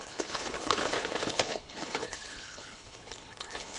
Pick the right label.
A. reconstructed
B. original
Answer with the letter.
A